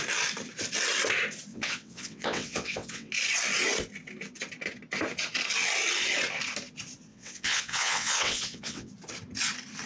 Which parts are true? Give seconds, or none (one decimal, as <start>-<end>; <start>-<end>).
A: 0.0-1.5; 3.1-7.1; 8.9-9.9